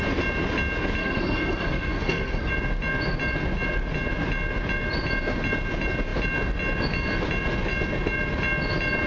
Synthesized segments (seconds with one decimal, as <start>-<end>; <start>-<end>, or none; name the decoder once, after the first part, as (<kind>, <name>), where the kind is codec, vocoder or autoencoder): 1.0-2.5 (codec, SNAC)